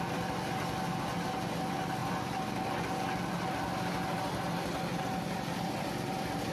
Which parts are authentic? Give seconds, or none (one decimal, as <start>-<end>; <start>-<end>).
0.0-6.5